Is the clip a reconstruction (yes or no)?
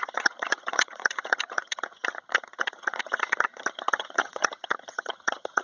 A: yes